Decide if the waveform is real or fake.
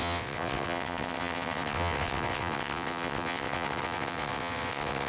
fake